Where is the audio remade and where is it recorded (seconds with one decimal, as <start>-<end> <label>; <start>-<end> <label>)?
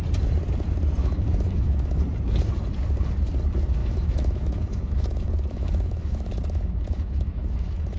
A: 0.0-1.0 recorded; 1.0-2.0 remade; 2.0-3.8 recorded; 3.8-8.0 remade